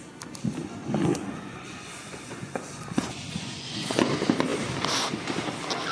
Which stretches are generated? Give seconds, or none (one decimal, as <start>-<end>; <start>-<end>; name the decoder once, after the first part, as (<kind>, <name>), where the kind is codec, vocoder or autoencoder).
0.6-4.1 (vocoder, Vocos)